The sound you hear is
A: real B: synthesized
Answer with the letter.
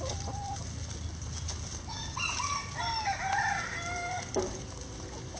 A